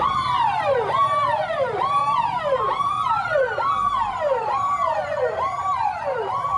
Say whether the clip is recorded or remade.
remade